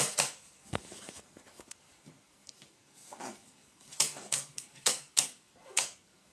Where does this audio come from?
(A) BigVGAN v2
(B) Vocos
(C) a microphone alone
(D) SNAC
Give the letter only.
D